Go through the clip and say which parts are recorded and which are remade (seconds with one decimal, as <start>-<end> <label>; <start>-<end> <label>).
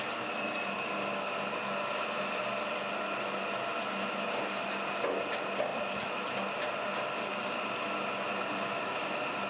0.0-9.5 recorded